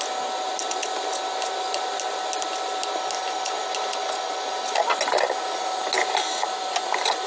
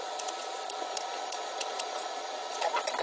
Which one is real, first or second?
first